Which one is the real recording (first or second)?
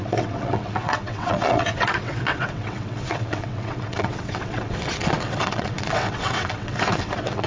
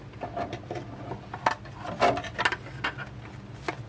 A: second